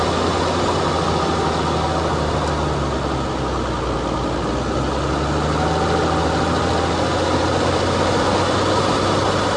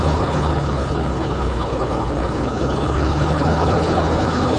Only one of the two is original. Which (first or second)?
first